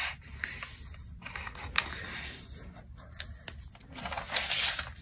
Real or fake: real